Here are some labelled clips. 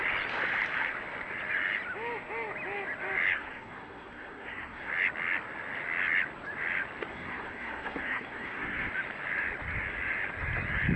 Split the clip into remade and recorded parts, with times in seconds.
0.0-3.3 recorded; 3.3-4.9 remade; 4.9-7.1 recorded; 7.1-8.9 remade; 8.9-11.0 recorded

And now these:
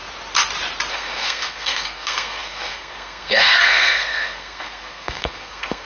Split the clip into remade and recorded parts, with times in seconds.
0.0-0.9 recorded; 0.9-5.9 remade

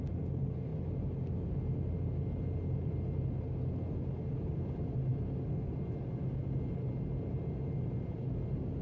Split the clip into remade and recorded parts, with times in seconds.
0.0-8.8 recorded

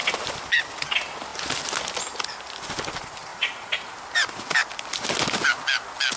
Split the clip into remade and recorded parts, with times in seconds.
0.0-3.3 recorded; 3.3-3.9 remade; 3.9-6.2 recorded

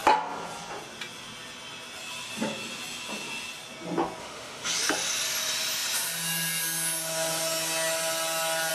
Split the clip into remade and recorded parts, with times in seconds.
0.0-4.2 recorded; 4.2-4.7 remade; 4.7-8.7 recorded

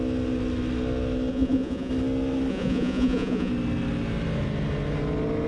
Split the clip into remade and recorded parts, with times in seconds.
0.0-1.3 recorded; 1.3-1.9 remade; 1.9-2.5 recorded; 2.5-3.5 remade; 3.5-5.5 recorded

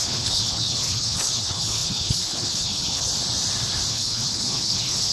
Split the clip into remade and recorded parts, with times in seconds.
0.0-3.1 remade; 3.1-3.9 recorded; 3.9-5.1 remade